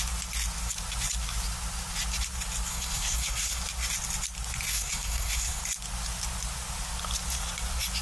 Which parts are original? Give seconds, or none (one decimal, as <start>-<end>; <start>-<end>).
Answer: 0.0-2.7; 3.6-4.7; 5.6-8.0